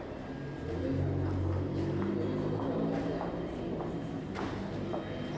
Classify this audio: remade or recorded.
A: recorded